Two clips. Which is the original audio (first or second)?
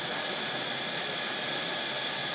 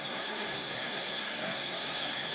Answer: first